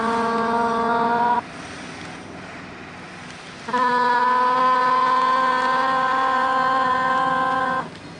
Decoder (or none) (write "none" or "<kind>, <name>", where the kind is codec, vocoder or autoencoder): none